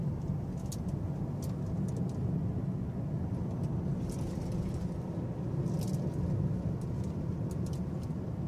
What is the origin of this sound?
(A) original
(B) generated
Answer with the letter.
A